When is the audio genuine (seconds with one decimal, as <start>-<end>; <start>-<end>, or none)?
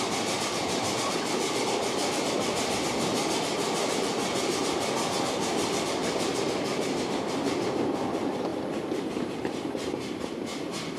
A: 8.5-9.0